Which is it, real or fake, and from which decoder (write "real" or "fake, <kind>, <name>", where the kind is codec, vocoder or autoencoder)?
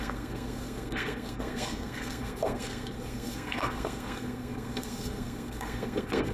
fake, codec, SNAC